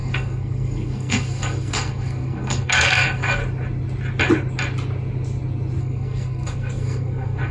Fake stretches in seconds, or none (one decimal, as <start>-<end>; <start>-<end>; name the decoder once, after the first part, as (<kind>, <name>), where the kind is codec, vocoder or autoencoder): 0.0-3.4 (codec, SNAC); 5.8-7.5